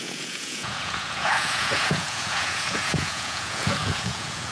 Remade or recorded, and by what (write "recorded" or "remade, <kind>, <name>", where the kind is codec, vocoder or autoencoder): remade, vocoder, Vocos